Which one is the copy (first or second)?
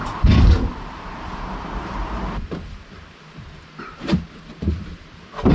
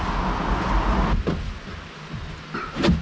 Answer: first